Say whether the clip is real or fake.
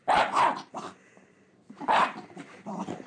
fake